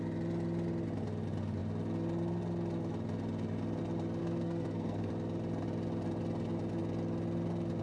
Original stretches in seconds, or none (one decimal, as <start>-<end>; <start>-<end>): 0.0-4.2; 5.1-7.8

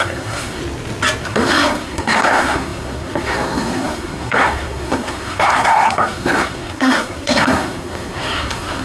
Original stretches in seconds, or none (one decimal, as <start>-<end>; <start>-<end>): 0.6-1.2